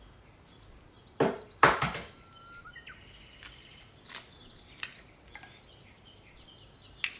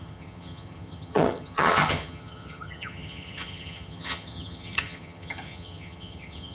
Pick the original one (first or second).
first